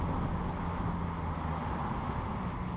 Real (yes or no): yes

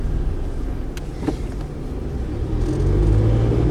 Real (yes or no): yes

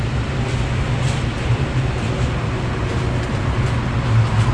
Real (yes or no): yes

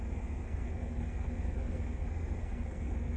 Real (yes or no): no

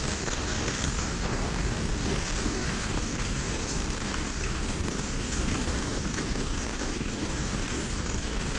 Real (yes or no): no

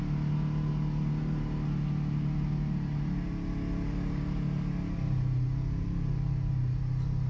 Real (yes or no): yes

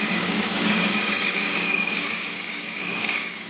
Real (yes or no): no